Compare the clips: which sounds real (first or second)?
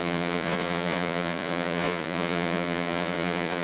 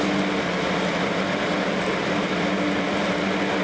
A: second